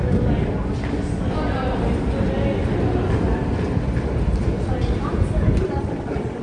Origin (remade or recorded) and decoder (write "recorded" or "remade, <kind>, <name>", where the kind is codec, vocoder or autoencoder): recorded